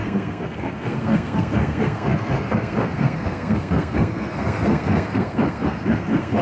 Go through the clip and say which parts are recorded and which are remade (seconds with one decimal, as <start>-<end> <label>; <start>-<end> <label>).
0.0-6.4 remade

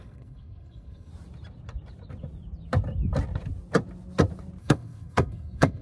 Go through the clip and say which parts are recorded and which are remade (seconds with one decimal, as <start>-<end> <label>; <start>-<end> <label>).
0.0-1.1 remade; 1.1-4.6 recorded; 4.6-5.8 remade

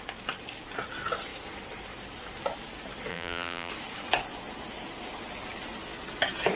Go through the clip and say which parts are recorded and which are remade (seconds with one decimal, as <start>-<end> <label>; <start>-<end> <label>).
0.0-3.1 recorded; 3.1-3.7 remade; 3.7-6.6 recorded

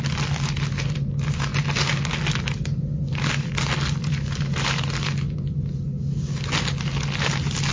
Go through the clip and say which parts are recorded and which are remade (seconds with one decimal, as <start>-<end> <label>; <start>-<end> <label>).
0.0-7.7 recorded